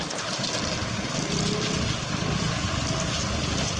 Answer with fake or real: real